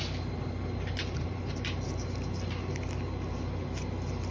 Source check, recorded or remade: recorded